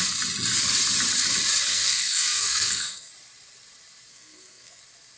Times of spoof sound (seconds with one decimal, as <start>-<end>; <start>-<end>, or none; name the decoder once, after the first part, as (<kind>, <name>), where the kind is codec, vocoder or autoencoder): 1.7-3.1 (codec, SNAC); 4.1-4.8

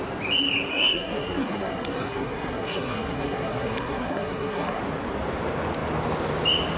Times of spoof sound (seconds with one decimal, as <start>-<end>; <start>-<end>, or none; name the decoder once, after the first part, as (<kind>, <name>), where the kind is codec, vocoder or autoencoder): 0.7-4.8 (codec, SNAC)

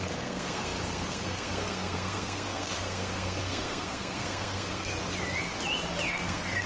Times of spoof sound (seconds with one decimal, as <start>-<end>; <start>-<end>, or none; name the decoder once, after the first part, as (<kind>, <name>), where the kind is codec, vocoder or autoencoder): 0.0-4.9 (codec, SNAC); 6.1-6.7

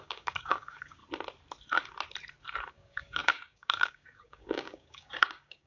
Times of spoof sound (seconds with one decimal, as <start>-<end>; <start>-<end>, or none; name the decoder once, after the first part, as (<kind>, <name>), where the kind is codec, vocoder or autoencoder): 0.0-1.0 (codec, DAC); 2.7-5.7

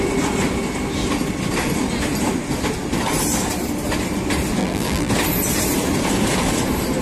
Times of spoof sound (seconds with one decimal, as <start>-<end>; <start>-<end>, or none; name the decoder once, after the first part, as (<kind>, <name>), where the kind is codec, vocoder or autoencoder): 4.6-5.1 (vocoder, BigVGAN v2)